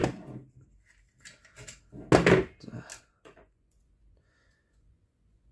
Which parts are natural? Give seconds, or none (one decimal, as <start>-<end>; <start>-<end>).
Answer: 0.0-3.0